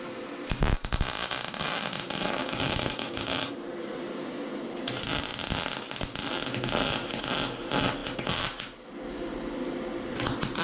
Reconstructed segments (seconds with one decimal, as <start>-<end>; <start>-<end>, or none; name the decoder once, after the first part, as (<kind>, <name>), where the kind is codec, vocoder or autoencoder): 2.4-3.5 (codec, DAC)